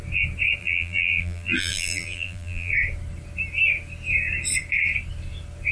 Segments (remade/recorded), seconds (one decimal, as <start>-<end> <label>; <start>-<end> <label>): 0.0-0.6 recorded; 0.6-2.7 remade; 2.7-5.7 recorded